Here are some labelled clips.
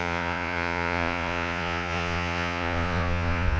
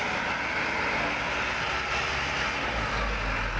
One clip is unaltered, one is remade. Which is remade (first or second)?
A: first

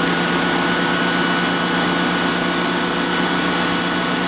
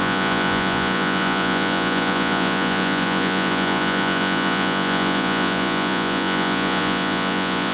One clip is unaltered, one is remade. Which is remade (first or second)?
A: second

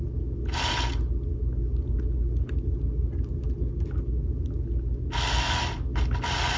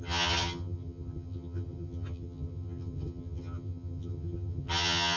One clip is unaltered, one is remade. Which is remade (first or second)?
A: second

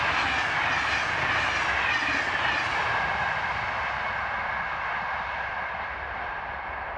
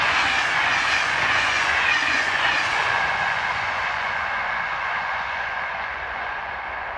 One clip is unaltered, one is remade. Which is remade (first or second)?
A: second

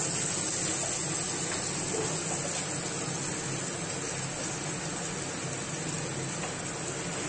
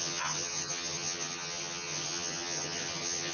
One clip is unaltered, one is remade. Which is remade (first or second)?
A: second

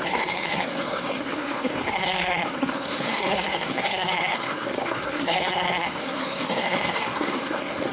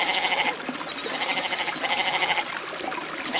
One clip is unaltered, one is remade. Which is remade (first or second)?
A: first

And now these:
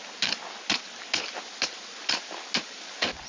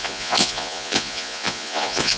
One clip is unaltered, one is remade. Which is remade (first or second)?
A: second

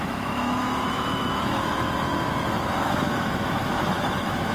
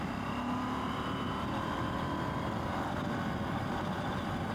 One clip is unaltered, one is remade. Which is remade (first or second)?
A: first